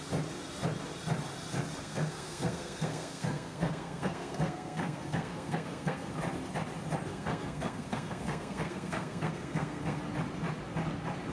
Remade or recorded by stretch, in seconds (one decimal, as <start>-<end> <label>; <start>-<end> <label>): 0.0-1.8 recorded; 1.8-6.1 remade; 6.1-7.1 recorded; 7.1-10.0 remade; 10.0-11.3 recorded